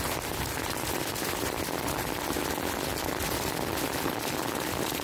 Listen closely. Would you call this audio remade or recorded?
recorded